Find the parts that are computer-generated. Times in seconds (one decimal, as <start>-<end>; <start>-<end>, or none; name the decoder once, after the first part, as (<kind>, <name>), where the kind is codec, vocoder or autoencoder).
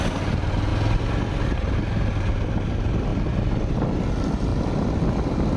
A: none